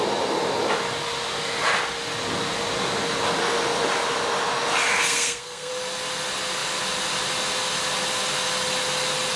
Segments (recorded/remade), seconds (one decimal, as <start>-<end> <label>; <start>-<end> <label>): 0.0-4.9 recorded; 4.9-5.7 remade; 5.7-9.4 recorded